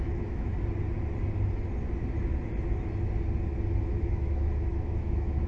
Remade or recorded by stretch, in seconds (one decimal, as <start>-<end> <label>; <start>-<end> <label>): 0.0-0.5 remade; 0.5-3.8 recorded; 3.8-5.5 remade